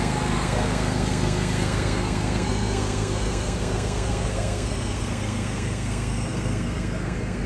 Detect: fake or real fake